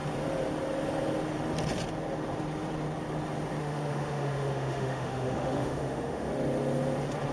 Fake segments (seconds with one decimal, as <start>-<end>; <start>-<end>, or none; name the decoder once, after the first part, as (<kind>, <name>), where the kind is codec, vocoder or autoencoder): 3.6-6.3 (autoencoder, DAC-VAE)